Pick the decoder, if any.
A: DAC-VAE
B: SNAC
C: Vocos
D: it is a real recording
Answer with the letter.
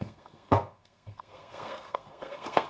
B